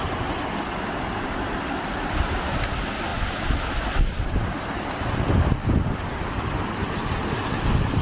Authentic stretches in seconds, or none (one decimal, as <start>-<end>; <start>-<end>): 0.0-8.0